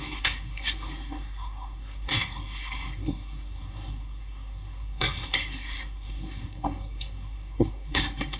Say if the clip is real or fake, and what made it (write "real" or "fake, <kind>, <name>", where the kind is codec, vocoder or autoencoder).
fake, codec, SNAC